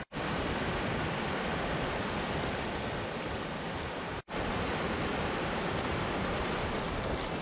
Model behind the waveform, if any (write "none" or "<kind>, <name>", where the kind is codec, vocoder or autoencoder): none